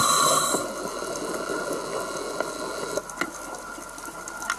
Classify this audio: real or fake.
real